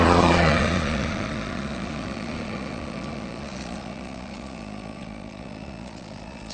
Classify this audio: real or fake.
fake